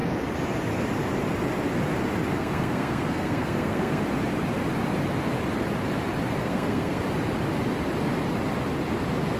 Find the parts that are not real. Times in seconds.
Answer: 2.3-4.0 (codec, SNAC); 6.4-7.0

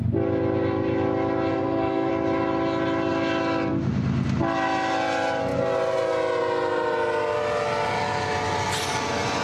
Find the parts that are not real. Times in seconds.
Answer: 1.5-2.1 (codec, SNAC)